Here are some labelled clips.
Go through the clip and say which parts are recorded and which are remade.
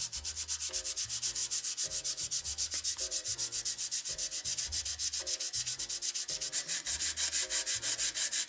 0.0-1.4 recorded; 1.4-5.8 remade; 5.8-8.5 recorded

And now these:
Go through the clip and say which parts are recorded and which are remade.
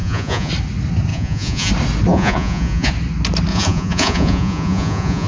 0.0-0.5 remade; 0.5-1.1 recorded; 1.1-1.7 remade; 1.7-2.1 recorded; 2.1-2.9 remade; 2.9-3.5 recorded; 3.5-5.3 remade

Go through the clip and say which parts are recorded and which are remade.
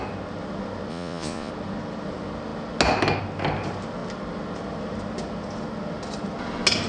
0.0-0.9 recorded; 0.9-1.5 remade; 1.5-6.9 recorded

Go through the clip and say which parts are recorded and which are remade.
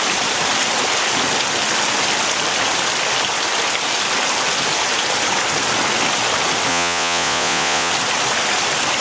0.0-6.7 recorded; 6.7-7.9 remade; 7.9-9.0 recorded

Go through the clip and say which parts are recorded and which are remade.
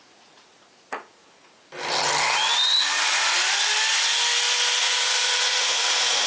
0.0-1.7 remade; 1.7-4.8 recorded; 4.8-6.3 remade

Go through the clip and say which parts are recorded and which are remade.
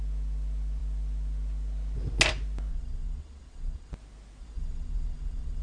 0.0-2.7 recorded; 2.7-3.9 remade; 3.9-4.4 recorded; 4.4-5.6 remade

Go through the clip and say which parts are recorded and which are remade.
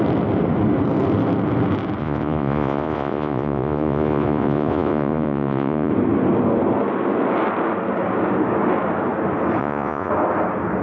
0.0-2.0 recorded; 2.0-5.9 remade; 5.9-9.6 recorded; 9.6-10.1 remade; 10.1-10.8 recorded